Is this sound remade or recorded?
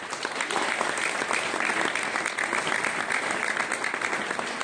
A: recorded